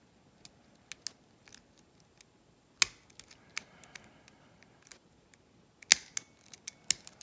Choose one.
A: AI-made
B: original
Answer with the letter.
B